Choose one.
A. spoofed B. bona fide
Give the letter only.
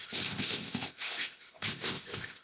A